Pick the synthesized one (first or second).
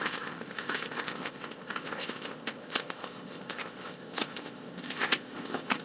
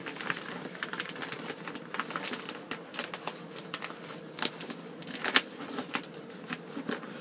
first